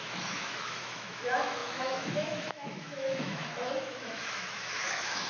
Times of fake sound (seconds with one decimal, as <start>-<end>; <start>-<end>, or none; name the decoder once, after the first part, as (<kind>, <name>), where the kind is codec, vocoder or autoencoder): 0.0-5.3 (autoencoder, DAC-VAE)

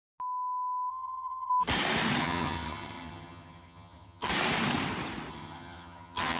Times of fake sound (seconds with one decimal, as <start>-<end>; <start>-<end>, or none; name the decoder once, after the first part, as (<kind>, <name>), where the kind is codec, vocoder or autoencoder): 0.9-1.5 (vocoder, HiFi-GAN); 2.2-4.3; 5.3-6.4

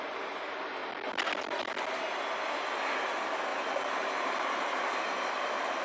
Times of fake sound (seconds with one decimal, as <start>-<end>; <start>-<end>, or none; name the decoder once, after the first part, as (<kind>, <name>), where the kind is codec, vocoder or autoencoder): none

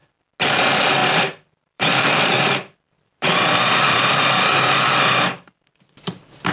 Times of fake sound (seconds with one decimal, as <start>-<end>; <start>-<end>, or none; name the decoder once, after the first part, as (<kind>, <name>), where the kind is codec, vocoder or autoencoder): 1.0-4.9 (vocoder, BigVGAN v2)

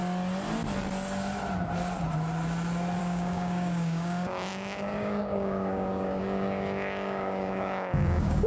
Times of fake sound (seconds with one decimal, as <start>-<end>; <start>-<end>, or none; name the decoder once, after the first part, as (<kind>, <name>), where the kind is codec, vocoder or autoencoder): 3.0-8.5 (codec, DAC)

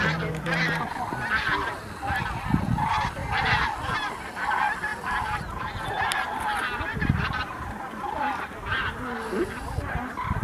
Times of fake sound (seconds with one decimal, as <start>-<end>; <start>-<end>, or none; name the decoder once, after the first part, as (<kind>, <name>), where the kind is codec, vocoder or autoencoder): 6.9-9.7 (vocoder, BigVGAN v2)

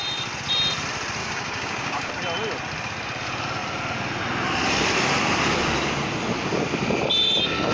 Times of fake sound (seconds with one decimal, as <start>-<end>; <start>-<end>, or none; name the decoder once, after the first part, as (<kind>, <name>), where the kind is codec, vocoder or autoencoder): 1.2-2.1 (codec, DAC)

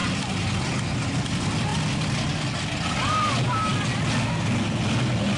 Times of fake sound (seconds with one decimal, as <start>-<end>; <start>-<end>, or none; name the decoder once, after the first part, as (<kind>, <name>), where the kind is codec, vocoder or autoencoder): none